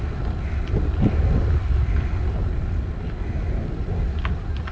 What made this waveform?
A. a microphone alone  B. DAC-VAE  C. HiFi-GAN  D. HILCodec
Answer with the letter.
A